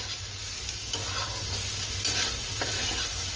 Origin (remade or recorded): recorded